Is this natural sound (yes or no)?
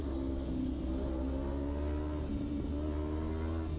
yes